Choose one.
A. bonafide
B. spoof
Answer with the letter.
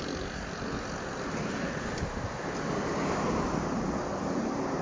A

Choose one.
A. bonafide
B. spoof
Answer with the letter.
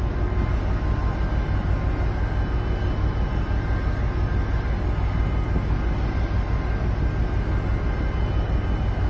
A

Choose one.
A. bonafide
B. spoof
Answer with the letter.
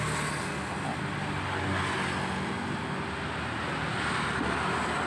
A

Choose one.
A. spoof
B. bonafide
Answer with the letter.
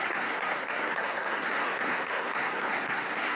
A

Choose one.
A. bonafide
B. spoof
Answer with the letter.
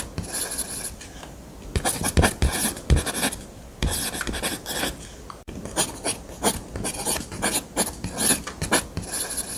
A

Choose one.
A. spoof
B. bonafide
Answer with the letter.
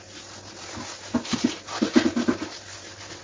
B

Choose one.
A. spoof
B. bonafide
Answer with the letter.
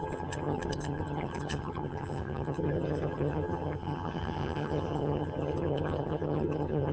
A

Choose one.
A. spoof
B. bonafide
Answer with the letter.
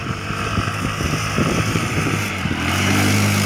A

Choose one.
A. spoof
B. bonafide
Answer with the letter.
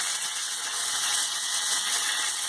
A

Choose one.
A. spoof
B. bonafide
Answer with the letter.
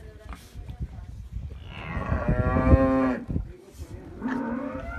B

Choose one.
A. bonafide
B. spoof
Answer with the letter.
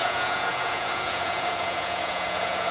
B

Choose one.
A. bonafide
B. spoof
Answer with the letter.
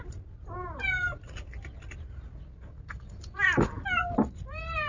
A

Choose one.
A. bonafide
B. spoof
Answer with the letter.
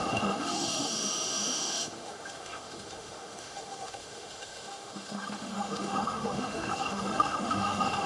B